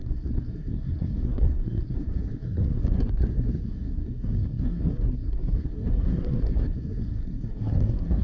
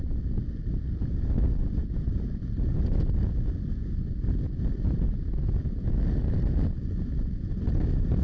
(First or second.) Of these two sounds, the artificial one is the first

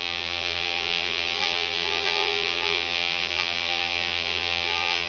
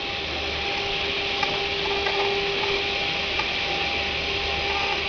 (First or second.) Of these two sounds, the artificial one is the first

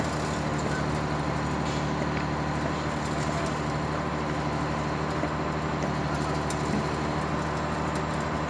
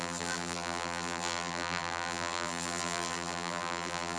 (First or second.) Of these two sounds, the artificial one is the second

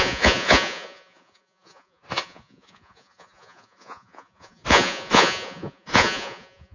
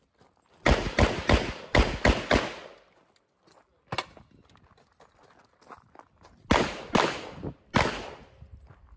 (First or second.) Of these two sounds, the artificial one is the first